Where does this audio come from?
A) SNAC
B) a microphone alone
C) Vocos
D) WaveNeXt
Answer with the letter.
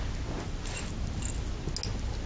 B